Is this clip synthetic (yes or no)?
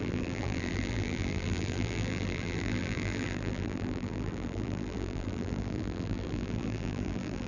yes